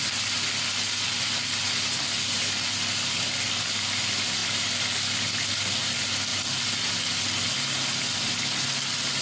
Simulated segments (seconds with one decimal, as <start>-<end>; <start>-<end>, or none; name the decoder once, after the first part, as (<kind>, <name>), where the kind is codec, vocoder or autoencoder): none